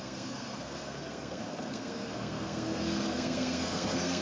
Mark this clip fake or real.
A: fake